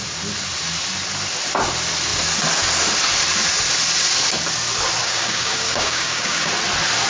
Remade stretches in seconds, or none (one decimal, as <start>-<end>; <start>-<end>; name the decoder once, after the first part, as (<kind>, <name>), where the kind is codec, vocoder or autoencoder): 5.0-6.5 (codec, DAC)